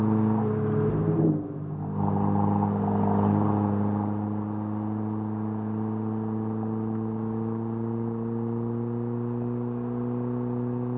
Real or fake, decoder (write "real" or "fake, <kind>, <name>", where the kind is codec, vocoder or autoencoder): real